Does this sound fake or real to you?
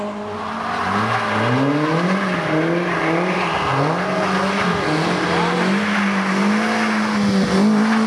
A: real